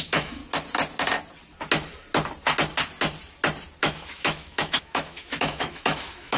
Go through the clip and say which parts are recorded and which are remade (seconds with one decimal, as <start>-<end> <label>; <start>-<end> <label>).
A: 0.0-0.4 remade; 0.4-3.8 recorded; 3.8-6.4 remade